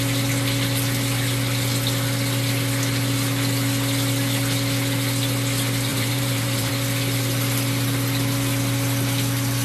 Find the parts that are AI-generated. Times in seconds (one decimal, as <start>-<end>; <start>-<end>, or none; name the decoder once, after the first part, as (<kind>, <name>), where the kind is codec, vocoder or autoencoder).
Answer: 5.9-6.7 (vocoder, BigVGAN v2)